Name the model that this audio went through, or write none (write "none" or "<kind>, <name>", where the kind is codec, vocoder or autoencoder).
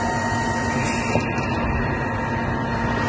none